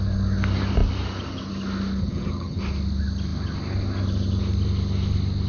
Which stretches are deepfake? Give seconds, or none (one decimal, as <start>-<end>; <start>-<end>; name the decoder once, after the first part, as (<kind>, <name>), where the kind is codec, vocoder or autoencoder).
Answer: 2.0-2.6 (vocoder, HiFi-GAN)